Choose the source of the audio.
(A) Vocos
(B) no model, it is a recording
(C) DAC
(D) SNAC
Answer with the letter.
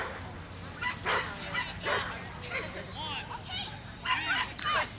B